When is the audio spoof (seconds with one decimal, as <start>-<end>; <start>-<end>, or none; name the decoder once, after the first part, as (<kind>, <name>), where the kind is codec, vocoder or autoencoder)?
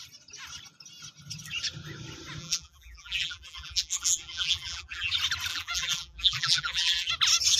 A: 2.4-5.1 (vocoder, BigVGAN v2); 5.5-7.1